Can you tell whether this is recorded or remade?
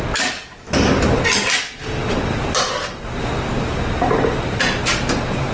recorded